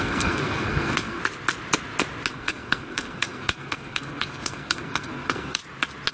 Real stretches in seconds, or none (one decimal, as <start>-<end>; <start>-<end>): 1.2-2.3; 5.6-6.1